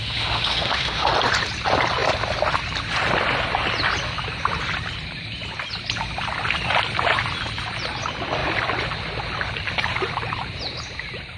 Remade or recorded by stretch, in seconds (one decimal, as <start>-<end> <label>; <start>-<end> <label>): 0.0-1.1 remade; 1.1-11.4 recorded